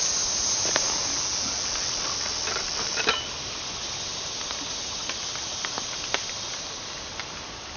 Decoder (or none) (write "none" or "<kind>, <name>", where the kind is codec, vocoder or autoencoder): none